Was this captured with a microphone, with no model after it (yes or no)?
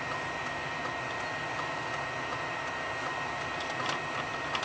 yes